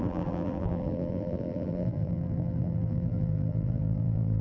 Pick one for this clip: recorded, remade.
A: remade